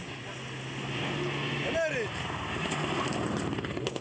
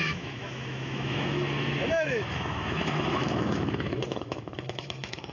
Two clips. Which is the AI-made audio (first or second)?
second